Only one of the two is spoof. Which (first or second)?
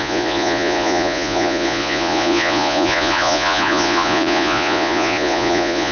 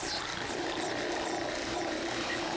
first